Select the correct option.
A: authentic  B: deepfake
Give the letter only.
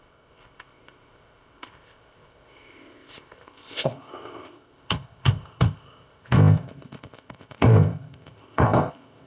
B